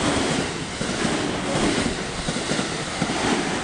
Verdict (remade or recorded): recorded